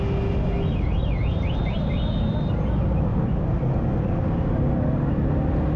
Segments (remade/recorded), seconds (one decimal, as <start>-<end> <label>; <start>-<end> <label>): 0.0-5.8 recorded